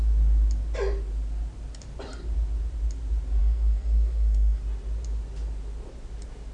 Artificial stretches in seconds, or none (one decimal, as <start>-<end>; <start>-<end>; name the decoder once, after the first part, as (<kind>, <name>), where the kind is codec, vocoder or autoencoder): 3.4-4.6 (codec, SNAC)

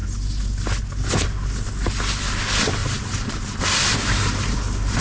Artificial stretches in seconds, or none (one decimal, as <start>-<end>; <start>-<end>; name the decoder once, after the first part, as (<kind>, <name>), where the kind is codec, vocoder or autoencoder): none

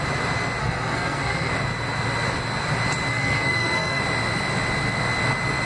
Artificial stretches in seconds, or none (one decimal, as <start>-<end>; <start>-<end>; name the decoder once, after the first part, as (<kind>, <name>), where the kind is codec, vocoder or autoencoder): 0.6-1.5 (codec, SNAC); 3.1-4.0